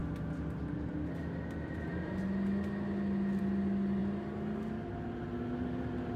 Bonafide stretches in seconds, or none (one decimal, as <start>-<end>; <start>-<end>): 0.0-6.2